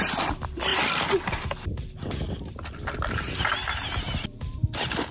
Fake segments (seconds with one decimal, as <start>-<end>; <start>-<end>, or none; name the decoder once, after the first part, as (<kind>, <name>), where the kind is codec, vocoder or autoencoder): none